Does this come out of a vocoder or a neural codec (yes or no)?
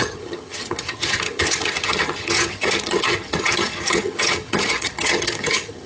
yes